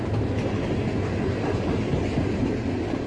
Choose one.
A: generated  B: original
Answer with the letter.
B